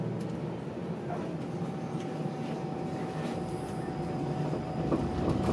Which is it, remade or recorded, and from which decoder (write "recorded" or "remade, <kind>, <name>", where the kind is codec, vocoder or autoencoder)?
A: recorded